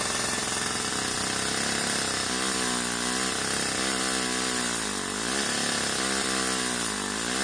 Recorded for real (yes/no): yes